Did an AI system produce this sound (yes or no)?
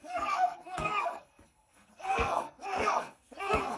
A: yes